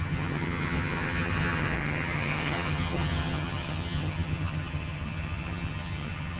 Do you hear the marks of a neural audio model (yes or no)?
yes